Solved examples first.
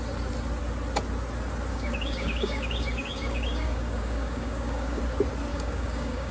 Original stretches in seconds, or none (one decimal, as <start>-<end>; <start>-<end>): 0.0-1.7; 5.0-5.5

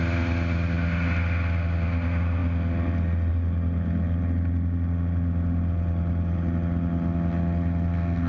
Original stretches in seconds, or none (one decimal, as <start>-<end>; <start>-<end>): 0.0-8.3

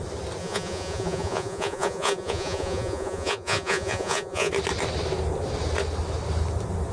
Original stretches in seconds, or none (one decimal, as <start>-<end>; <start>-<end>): 0.0-0.4; 4.5-6.9